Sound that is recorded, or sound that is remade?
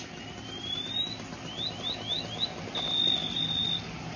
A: recorded